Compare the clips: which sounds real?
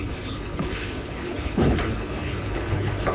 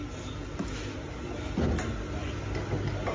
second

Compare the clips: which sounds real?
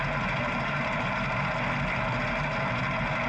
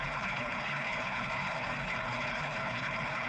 first